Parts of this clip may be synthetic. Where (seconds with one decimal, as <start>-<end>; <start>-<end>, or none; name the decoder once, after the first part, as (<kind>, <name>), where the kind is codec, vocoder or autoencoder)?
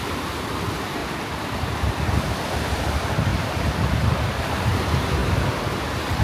0.0-3.3 (vocoder, BigVGAN v2); 4.2-5.2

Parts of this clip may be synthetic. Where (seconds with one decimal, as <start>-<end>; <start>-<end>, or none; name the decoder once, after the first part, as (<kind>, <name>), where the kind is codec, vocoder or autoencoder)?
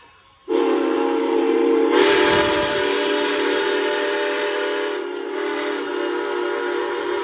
0.0-5.9 (vocoder, BigVGAN v2); 6.8-7.2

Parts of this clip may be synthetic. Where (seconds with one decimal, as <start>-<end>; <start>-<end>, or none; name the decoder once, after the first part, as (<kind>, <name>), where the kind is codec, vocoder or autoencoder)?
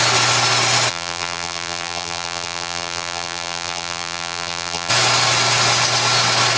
0.9-4.9 (vocoder, BigVGAN v2)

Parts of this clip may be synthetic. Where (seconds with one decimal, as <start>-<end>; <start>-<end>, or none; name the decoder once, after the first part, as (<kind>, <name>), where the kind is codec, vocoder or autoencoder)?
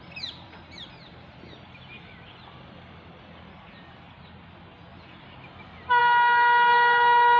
none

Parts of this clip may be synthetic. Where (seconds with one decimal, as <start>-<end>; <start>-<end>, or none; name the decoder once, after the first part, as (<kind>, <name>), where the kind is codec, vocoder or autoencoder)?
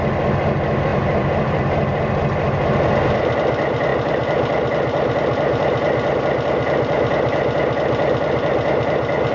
0.9-1.6 (vocoder, BigVGAN v2)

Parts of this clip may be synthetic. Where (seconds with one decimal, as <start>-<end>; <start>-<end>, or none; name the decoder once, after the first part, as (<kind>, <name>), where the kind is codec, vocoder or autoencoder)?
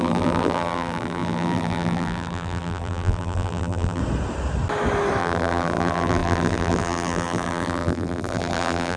0.0-4.0 (vocoder, BigVGAN v2); 5.2-9.0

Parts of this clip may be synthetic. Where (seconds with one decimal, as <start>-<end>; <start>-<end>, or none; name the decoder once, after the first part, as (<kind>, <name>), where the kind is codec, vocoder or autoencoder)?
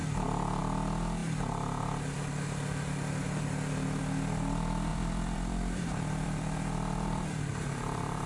4.9-8.3 (vocoder, BigVGAN v2)